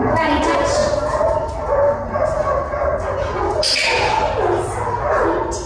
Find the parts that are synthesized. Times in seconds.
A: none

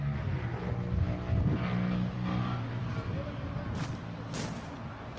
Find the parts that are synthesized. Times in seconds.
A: none

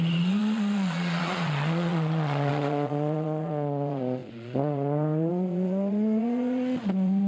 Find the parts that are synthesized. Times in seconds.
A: 0.0-7.3 (vocoder, Vocos)

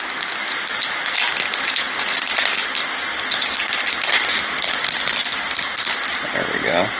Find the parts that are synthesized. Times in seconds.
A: none

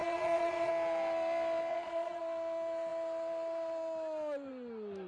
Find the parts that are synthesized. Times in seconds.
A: 0.0-0.7 (vocoder, Vocos); 1.7-2.2